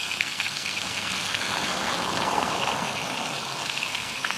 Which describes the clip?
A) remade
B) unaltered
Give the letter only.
A